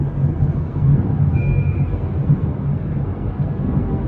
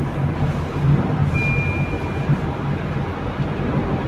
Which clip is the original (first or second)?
second